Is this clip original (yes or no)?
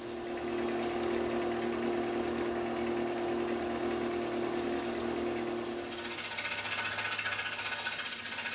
yes